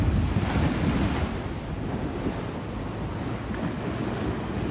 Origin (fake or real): real